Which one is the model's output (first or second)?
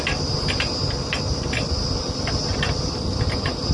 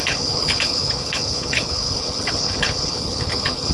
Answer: second